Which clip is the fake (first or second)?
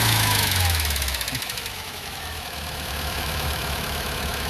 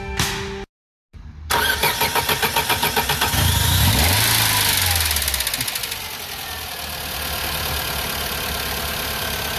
first